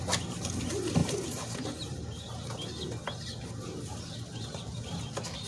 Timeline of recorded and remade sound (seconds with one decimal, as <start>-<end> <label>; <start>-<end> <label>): 0.0-5.5 recorded